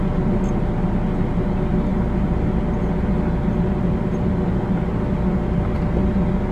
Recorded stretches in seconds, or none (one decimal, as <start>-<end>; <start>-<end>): 0.0-6.5